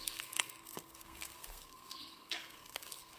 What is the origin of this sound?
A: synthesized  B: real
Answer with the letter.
A